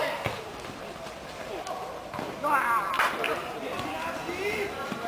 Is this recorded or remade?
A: remade